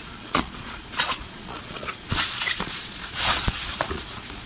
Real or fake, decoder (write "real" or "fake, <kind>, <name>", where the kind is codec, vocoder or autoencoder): fake, vocoder, Vocos